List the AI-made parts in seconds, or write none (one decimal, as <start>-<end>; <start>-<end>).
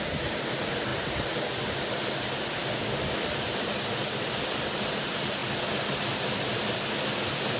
none